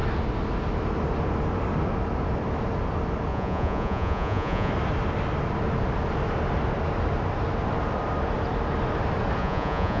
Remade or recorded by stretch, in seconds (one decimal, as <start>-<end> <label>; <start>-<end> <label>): 0.0-3.3 recorded; 3.3-4.7 remade; 4.7-9.4 recorded; 9.4-10.0 remade